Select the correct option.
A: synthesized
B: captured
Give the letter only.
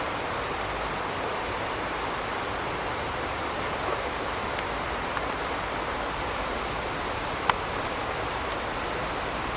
B